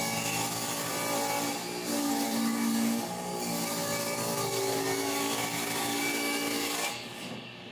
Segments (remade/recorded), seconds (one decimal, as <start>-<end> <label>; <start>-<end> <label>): 0.0-0.9 remade; 0.9-1.9 recorded; 1.9-7.7 remade